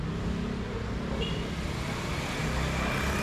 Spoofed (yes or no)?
no